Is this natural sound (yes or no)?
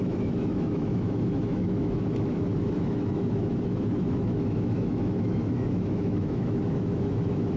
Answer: no